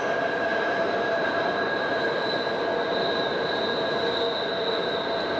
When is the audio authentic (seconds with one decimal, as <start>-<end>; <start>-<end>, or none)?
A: 0.0-0.5; 2.1-2.8; 4.0-5.4